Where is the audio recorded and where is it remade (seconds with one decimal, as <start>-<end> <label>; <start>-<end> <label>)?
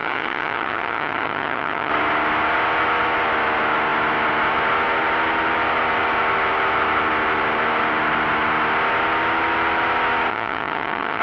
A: 0.0-1.9 remade; 1.9-10.3 recorded; 10.3-11.2 remade